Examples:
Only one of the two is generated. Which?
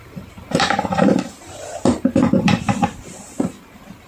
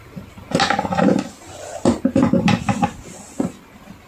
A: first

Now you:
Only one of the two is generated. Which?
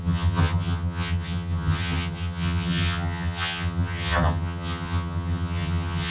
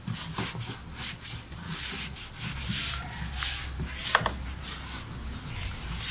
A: first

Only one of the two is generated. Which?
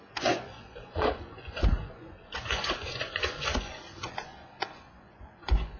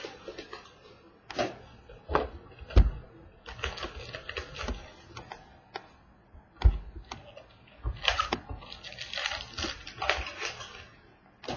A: first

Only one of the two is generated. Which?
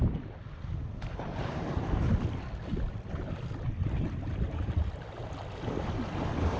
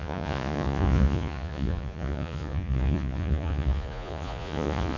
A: second